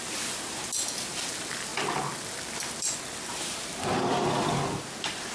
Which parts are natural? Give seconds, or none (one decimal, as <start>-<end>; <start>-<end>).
0.0-5.3